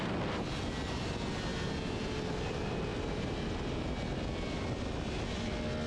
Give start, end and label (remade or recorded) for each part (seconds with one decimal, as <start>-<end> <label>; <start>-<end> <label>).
0.0-5.9 recorded